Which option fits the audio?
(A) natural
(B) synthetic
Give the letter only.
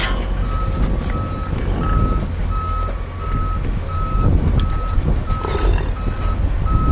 A